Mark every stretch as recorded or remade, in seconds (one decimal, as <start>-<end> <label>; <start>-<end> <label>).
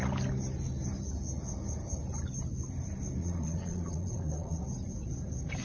0.0-3.2 recorded; 3.2-4.6 remade; 4.6-5.6 recorded